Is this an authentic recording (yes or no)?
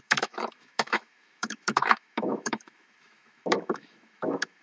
no